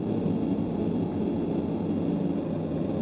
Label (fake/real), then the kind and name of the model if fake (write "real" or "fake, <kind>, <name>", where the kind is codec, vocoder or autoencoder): real